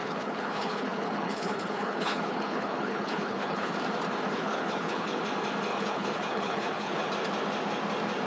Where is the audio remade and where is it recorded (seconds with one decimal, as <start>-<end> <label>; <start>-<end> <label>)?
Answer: 0.0-3.7 remade; 3.7-4.3 recorded; 4.3-5.2 remade; 5.2-5.7 recorded; 5.7-7.1 remade; 7.1-8.3 recorded